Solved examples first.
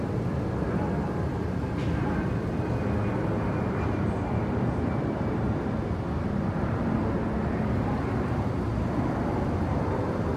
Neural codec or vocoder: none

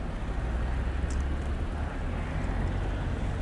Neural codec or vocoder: none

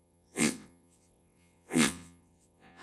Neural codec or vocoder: vocoder, WaveNeXt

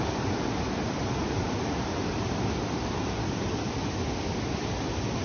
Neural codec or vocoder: none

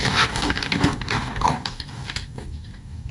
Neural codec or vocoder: codec, DAC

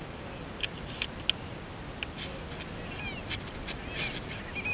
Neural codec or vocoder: none